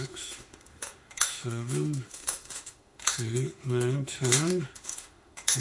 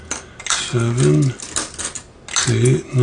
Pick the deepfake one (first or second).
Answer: first